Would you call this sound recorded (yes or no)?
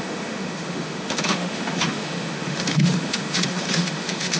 no